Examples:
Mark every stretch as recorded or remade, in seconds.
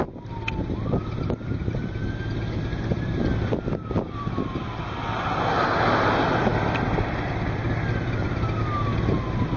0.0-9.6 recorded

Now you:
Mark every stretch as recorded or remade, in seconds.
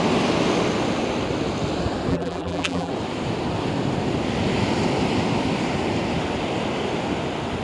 0.0-2.1 recorded; 2.1-2.9 remade; 2.9-7.6 recorded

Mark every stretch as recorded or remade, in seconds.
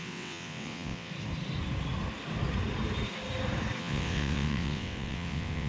0.0-1.1 remade; 1.1-3.8 recorded; 3.8-5.7 remade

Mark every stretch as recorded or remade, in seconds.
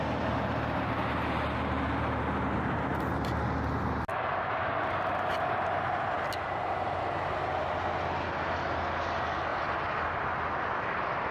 0.0-9.5 recorded; 9.5-10.3 remade; 10.3-11.3 recorded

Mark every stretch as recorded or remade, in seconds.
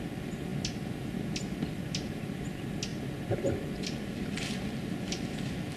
0.0-5.8 recorded